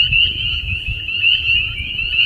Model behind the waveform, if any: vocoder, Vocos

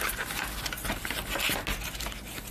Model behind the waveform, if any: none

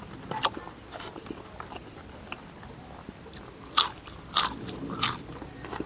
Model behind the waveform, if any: none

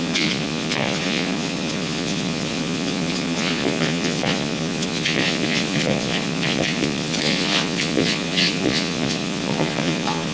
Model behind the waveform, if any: vocoder, Vocos